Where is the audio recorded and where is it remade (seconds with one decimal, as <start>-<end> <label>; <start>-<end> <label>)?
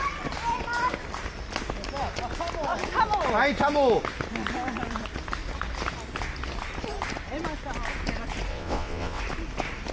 0.0-8.5 recorded; 8.5-9.2 remade; 9.2-9.9 recorded